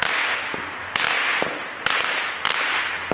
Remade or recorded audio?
recorded